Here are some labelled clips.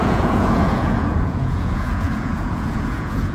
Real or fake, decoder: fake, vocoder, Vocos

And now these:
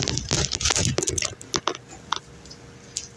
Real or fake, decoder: real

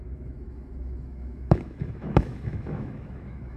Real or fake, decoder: fake, autoencoder, DAC-VAE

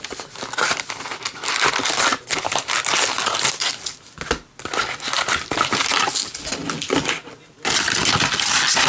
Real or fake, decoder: real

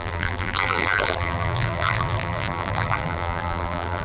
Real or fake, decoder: fake, vocoder, BigVGAN v2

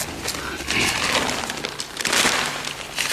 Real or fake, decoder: real